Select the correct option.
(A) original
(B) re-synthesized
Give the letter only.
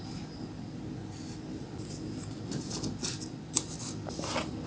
A